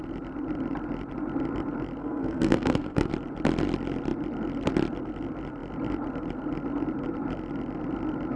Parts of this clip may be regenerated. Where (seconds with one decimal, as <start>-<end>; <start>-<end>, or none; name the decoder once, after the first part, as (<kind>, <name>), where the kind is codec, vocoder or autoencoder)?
2.0-3.1 (codec, SNAC)